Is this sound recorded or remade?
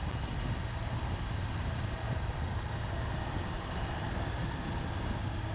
recorded